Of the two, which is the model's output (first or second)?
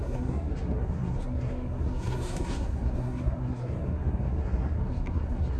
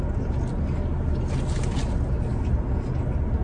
first